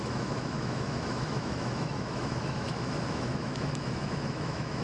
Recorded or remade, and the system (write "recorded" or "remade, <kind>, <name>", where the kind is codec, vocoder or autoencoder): remade, autoencoder, DAC-VAE